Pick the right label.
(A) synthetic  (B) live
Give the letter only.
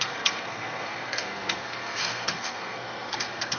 A